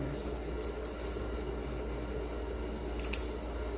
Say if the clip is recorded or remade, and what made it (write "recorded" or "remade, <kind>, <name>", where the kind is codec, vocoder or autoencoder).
recorded